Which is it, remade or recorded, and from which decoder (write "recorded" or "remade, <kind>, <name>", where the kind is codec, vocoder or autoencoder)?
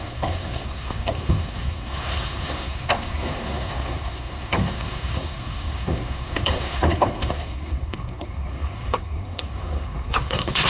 remade, codec, SNAC